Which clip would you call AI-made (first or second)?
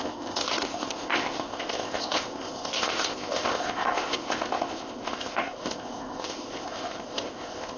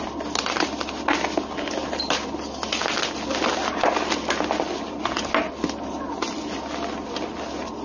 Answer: first